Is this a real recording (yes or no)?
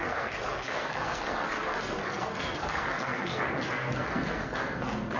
no